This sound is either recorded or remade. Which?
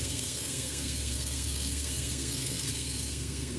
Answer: remade